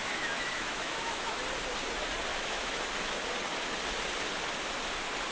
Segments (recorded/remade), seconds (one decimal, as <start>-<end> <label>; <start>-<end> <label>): 0.0-1.4 remade; 1.4-2.3 recorded; 2.3-2.8 remade; 2.8-5.3 recorded